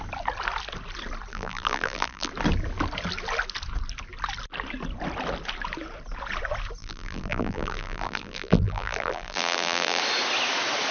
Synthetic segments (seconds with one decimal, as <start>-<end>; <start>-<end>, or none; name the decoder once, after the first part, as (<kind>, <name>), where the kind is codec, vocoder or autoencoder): 1.3-2.3 (vocoder, BigVGAN v2); 6.8-10.0